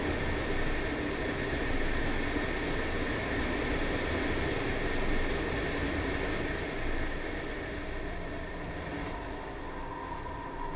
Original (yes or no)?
yes